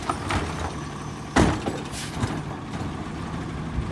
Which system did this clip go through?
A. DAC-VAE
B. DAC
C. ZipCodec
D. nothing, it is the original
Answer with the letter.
D